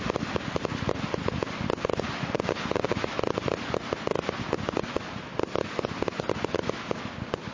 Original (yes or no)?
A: yes